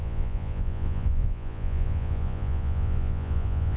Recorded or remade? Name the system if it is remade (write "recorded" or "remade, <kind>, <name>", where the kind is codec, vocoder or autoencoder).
remade, vocoder, Vocos